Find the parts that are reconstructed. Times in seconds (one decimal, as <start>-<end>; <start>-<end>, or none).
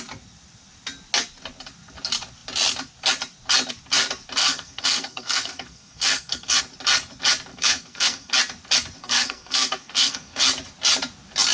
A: 4.4-6.6; 7.5-8.3; 9.0-10.4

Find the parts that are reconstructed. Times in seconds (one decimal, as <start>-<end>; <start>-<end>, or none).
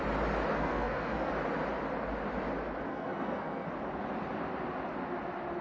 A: 0.5-1.3; 2.9-3.7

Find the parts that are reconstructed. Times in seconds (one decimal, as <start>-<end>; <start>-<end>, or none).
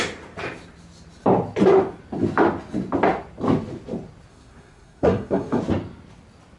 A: 4.3-5.6